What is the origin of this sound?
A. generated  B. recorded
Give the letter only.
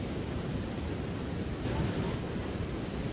B